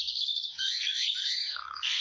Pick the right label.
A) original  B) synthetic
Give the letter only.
B